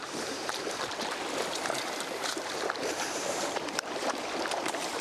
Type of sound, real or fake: fake